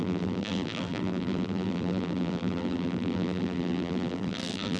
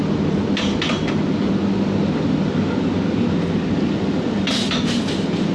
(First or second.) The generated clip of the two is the first